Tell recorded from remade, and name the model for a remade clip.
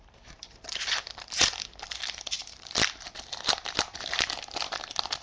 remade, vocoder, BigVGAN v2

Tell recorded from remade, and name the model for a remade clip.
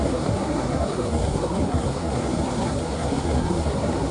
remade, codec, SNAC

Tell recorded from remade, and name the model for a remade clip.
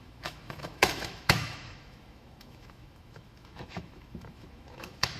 remade, autoencoder, DAC-VAE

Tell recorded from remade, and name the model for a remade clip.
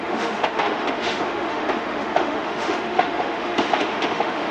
remade, autoencoder, DAC-VAE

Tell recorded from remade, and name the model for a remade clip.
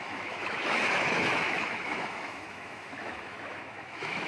remade, autoencoder, DAC-VAE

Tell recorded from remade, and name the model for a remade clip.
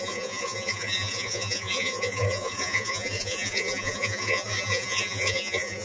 remade, vocoder, Vocos